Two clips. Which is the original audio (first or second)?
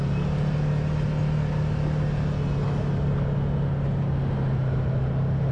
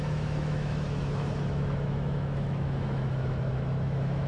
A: first